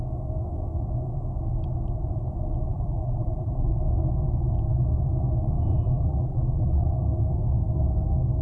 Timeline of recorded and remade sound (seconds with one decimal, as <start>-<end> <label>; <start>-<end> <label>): 0.0-2.7 recorded; 2.7-3.7 remade; 3.7-5.7 recorded; 5.7-6.8 remade; 6.8-8.4 recorded